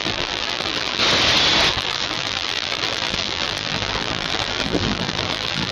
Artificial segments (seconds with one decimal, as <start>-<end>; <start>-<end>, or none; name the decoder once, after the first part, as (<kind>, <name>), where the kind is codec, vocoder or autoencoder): 0.0-1.0 (vocoder, BigVGAN v2); 1.7-5.7